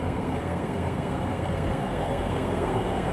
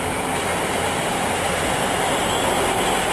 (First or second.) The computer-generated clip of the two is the first